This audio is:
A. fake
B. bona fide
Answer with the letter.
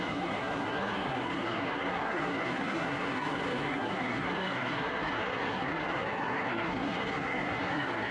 A